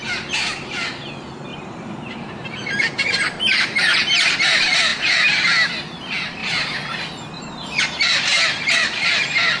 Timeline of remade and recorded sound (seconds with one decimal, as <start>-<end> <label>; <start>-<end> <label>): 0.0-1.5 recorded; 1.5-4.3 remade; 4.3-9.6 recorded